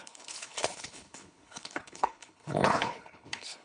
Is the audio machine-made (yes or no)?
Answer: yes